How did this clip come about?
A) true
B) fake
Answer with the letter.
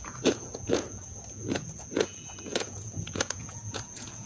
B